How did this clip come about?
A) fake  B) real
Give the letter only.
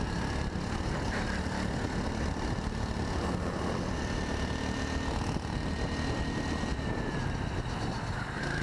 B